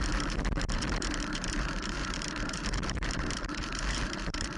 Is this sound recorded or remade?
remade